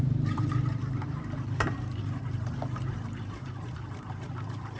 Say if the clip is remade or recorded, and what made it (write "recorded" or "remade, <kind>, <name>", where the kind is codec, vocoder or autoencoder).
remade, vocoder, BigVGAN v2